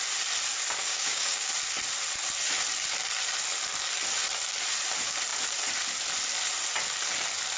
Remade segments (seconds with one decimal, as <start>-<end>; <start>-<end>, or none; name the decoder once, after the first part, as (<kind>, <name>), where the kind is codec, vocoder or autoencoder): 0.8-1.5 (codec, DAC)